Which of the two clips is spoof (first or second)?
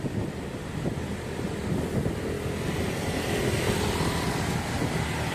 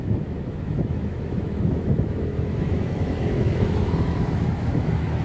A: second